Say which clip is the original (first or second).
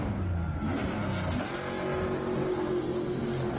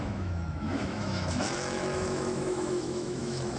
first